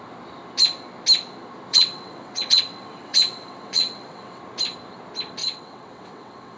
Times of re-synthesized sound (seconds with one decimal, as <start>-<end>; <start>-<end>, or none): 1.7-4.4; 5.4-6.6